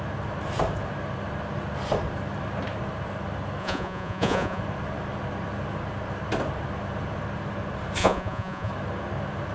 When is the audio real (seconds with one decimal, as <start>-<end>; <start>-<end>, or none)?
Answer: 0.0-3.6; 4.6-8.0; 8.7-9.5